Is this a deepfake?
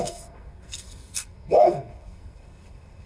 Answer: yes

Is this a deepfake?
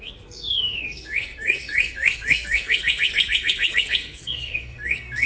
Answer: yes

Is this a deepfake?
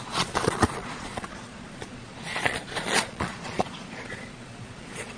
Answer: yes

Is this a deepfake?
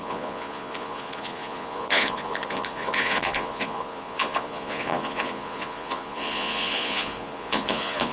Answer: yes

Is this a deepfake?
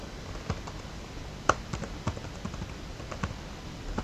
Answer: no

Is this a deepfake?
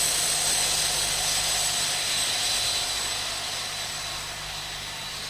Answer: no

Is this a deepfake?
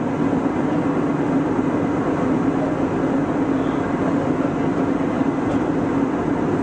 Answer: no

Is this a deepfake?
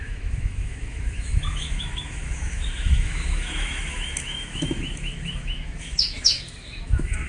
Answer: yes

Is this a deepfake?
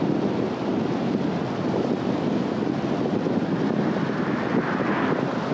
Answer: no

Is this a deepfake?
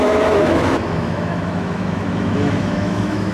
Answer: yes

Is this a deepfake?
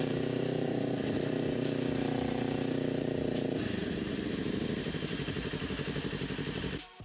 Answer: yes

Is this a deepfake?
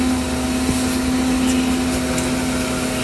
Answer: no